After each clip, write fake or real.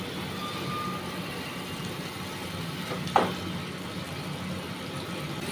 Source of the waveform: real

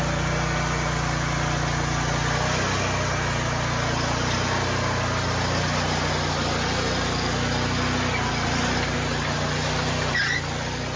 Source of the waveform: real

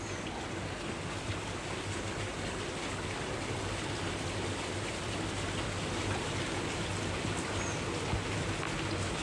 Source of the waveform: real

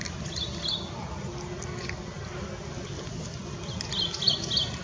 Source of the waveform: real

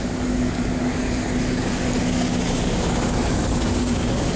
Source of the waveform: fake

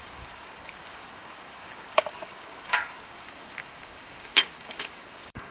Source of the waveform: fake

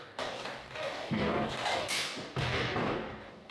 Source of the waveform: fake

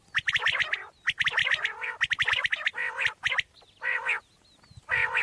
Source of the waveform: real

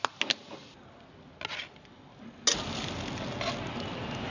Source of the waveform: real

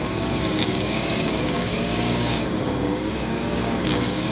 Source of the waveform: fake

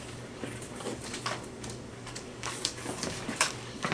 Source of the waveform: fake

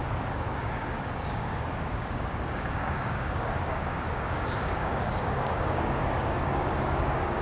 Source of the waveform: fake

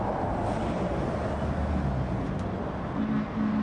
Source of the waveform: real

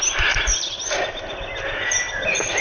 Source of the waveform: real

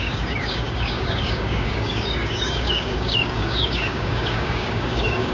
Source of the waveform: fake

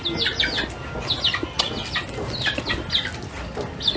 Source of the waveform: real